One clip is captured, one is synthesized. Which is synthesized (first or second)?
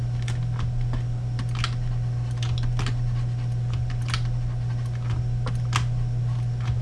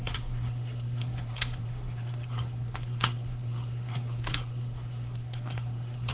second